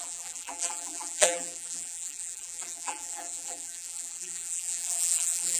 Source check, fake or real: fake